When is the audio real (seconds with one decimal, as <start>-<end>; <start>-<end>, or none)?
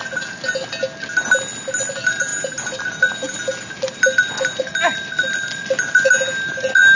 0.0-7.0